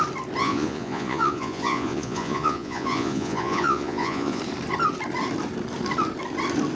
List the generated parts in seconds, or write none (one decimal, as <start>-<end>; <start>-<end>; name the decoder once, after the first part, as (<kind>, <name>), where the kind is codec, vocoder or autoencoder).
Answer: 0.4-4.4 (vocoder, Vocos)